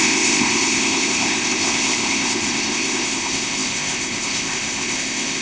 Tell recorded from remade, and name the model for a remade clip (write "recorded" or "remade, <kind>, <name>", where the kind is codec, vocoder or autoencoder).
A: remade, codec, ZipCodec